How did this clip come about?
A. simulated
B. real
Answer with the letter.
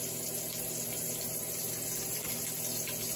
B